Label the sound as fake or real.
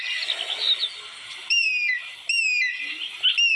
real